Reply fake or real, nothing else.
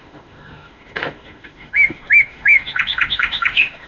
fake